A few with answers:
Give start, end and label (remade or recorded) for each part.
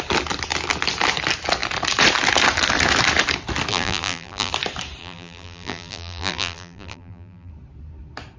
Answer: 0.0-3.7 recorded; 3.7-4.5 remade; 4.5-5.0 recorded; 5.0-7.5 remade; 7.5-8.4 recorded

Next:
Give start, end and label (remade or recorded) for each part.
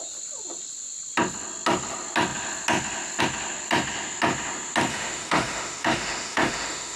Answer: 0.0-4.9 recorded; 4.9-7.0 remade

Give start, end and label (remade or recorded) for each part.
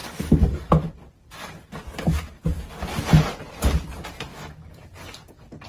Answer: 0.0-4.3 recorded; 4.3-4.8 remade; 4.8-5.7 recorded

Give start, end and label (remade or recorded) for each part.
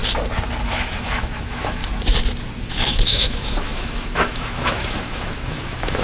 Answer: 0.0-0.6 recorded; 0.6-1.8 remade; 1.8-2.7 recorded; 2.7-6.0 remade